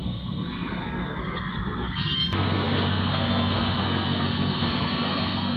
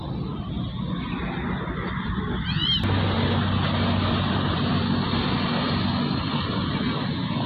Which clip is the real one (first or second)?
second